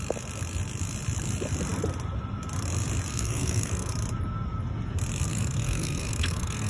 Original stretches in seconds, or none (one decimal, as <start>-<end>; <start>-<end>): 0.0-3.1; 3.9-5.3